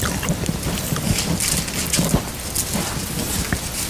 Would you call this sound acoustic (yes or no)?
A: yes